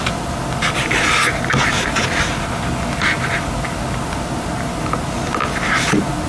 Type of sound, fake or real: real